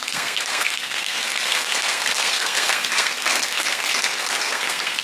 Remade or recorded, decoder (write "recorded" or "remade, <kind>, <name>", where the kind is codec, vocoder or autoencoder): remade, codec, SNAC